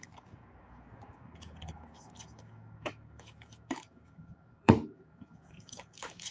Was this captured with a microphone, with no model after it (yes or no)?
no